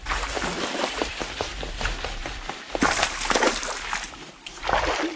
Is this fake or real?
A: real